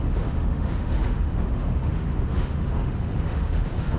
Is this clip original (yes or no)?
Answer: no